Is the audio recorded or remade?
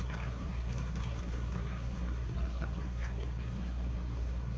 remade